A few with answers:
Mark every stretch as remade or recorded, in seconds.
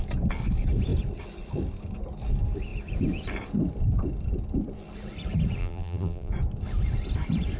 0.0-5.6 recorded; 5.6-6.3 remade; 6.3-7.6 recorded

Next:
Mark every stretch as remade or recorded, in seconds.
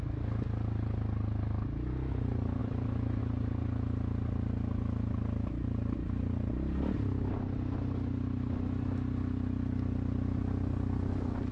0.0-2.6 recorded; 2.6-3.2 remade; 3.2-11.5 recorded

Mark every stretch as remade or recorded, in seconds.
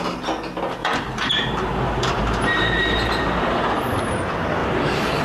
0.0-0.8 recorded; 0.8-3.9 remade; 3.9-4.6 recorded; 4.6-5.2 remade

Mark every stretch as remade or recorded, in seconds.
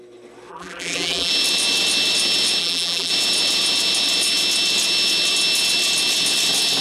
0.0-0.5 recorded; 0.5-1.3 remade; 1.3-2.6 recorded; 2.6-3.1 remade; 3.1-6.8 recorded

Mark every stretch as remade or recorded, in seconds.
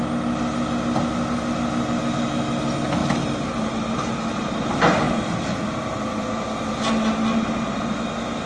0.0-3.0 recorded; 3.0-6.9 remade; 6.9-8.5 recorded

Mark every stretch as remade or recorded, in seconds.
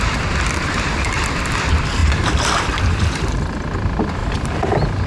0.0-2.0 remade; 2.0-2.6 recorded; 2.6-4.2 remade; 4.2-5.1 recorded